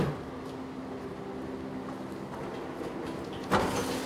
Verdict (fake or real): real